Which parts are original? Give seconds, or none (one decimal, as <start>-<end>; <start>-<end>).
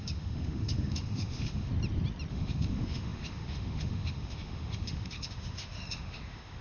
1.7-2.3